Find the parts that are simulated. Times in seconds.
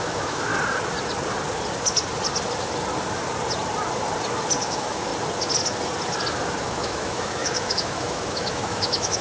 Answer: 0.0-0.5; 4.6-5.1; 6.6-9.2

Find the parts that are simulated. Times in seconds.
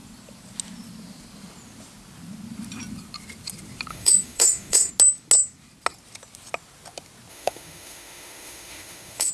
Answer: 3.9-4.9; 7.3-9.3